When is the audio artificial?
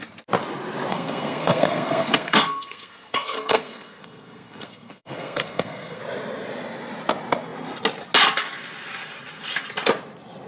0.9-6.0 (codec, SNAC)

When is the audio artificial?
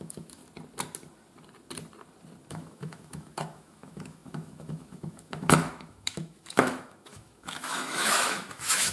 0.0-0.4 (autoencoder, DAC-VAE); 2.5-8.9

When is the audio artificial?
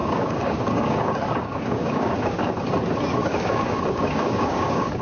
0.0-2.5 (codec, DAC); 3.2-5.0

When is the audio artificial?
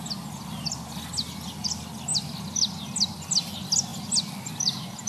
none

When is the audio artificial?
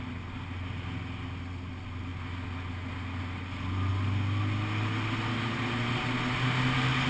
none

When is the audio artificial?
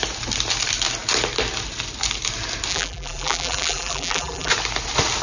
2.7-4.5 (vocoder, BigVGAN v2)